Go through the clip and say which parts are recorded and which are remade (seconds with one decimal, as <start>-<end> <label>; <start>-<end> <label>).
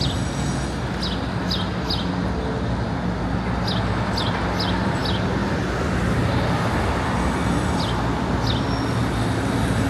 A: 0.0-9.9 recorded